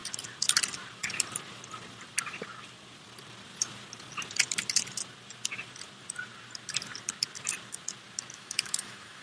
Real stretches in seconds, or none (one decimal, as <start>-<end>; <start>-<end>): 0.0-8.3

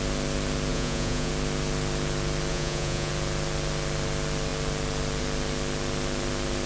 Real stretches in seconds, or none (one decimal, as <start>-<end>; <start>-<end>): 0.0-0.7; 1.3-2.5; 3.1-6.7

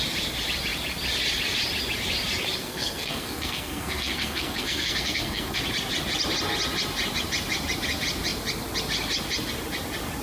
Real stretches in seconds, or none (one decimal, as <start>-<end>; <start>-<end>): 0.0-2.6; 5.6-10.2

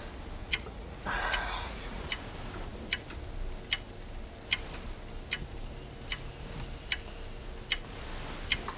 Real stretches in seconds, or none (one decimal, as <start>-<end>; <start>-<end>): 0.0-0.4; 2.0-8.8

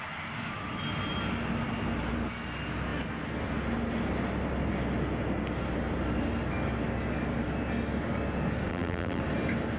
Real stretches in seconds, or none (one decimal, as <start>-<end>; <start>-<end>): 0.0-8.7; 9.2-9.8